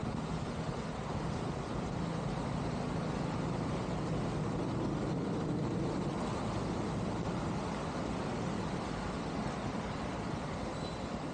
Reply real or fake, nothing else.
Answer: real